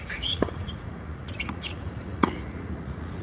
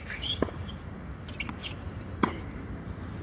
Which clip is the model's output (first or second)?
first